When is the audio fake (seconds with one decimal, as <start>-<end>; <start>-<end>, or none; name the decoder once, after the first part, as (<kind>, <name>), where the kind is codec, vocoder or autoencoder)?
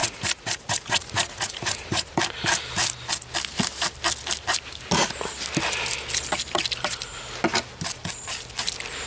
0.0-2.2 (vocoder, Vocos)